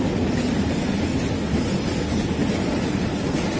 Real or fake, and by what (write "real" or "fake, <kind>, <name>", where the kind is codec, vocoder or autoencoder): real